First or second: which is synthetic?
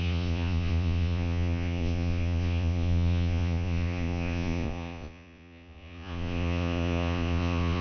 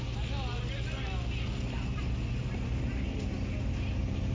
first